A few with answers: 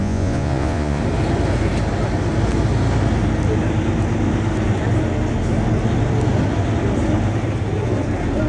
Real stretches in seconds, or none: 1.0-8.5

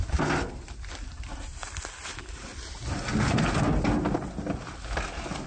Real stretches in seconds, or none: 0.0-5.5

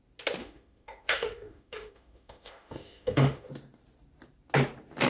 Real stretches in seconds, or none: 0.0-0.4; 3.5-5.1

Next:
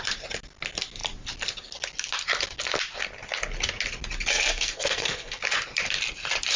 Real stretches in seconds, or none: 0.0-4.3; 5.4-6.6

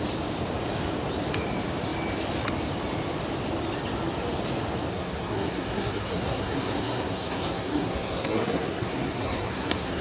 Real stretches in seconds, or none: 0.0-4.9

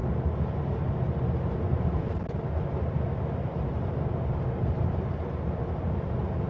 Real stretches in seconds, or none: 0.0-1.7; 5.6-6.5

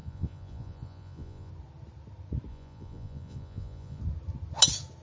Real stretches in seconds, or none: 1.5-2.5; 4.0-5.0